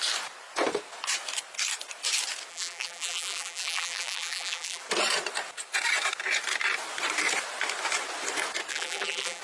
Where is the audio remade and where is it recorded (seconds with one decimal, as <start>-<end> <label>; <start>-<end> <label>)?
0.0-2.5 recorded; 2.5-4.8 remade; 4.8-8.7 recorded; 8.7-9.4 remade